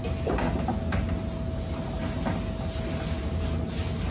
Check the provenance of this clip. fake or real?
real